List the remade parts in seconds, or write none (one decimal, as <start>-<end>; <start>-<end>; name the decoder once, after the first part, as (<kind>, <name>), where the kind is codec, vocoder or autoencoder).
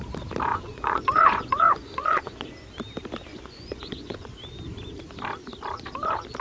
0.5-2.5 (vocoder, Vocos); 3.3-4.3